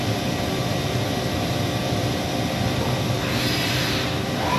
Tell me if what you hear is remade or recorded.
remade